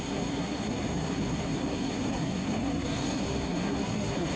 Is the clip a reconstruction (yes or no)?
yes